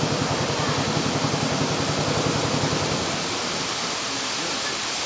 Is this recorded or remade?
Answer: recorded